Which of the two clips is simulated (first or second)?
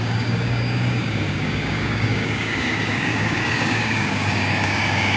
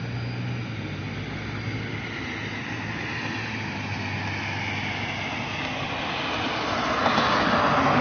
first